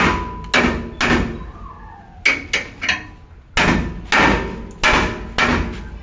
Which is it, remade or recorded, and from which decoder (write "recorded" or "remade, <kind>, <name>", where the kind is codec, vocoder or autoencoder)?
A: recorded